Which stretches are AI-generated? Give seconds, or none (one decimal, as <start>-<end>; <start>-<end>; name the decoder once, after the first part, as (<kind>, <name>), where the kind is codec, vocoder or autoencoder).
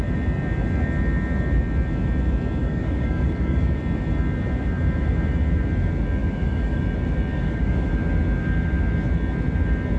2.6-3.8 (codec, DAC); 6.2-6.8; 7.3-7.9